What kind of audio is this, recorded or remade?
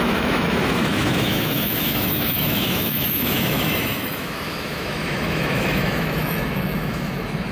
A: remade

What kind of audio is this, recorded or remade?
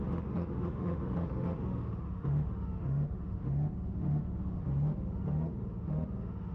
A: remade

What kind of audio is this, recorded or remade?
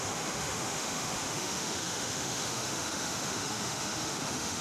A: remade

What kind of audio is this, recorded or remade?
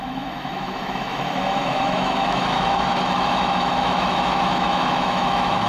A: remade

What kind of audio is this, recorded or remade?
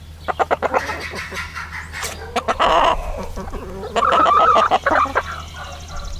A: recorded